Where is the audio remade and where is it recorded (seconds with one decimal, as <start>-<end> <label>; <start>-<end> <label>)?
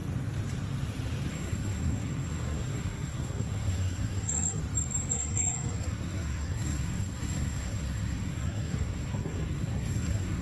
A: 0.0-1.3 recorded; 1.3-4.6 remade; 4.6-5.1 recorded; 5.1-10.4 remade